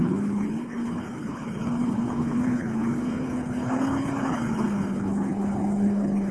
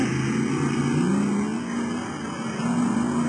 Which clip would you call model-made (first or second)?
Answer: first